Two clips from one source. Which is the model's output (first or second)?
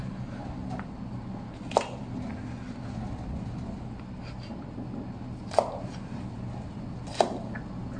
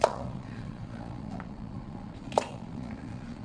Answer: second